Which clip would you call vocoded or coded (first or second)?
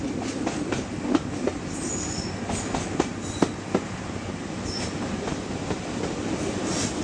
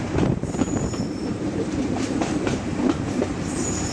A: second